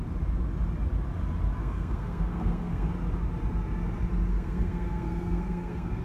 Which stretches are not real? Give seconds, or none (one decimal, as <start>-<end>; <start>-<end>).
1.6-2.9; 4.3-6.0